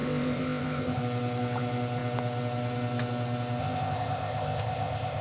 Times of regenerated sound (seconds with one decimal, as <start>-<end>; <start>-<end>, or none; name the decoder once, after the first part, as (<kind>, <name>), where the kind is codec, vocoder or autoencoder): 0.0-1.0 (codec, ZipCodec); 3.6-5.2